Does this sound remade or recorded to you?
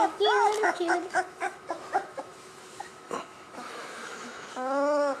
remade